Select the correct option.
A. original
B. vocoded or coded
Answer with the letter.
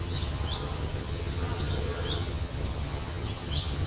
B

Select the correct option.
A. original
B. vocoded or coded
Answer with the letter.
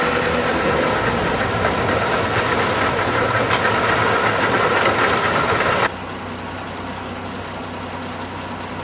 A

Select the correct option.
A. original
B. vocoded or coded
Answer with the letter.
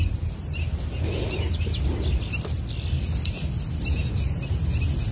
A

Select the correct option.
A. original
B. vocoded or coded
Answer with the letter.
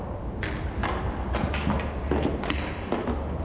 A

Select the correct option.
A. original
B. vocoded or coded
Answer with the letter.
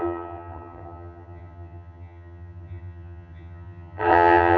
B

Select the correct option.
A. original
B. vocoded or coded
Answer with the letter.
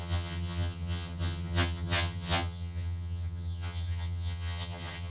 B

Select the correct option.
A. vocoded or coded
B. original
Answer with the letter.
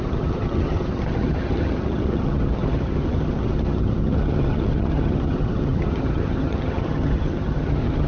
A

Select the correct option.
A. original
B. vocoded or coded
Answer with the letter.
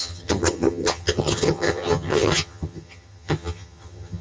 B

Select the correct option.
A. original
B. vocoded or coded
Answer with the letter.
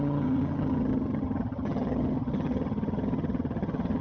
B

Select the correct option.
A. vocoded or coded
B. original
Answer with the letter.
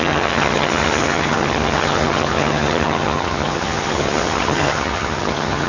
A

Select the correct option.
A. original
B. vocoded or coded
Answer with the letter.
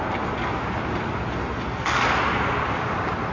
A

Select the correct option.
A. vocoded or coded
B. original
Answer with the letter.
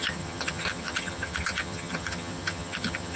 A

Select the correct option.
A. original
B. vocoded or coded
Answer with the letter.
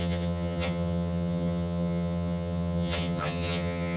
B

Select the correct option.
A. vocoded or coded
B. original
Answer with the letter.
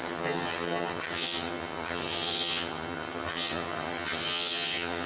A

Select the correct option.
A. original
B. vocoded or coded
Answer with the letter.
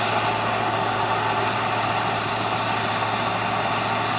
A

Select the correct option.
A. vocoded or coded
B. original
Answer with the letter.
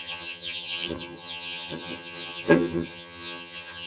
A